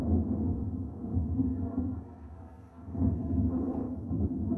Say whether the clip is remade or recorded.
remade